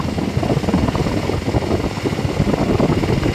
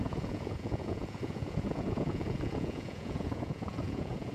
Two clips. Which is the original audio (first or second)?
first